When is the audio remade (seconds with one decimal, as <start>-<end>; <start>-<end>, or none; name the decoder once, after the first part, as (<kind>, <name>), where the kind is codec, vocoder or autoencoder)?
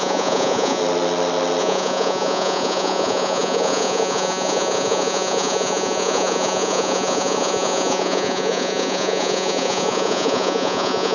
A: 0.0-0.8 (vocoder, Vocos); 1.6-11.1